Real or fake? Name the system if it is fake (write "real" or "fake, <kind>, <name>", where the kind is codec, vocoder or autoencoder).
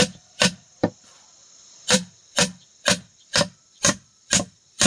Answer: fake, vocoder, BigVGAN v2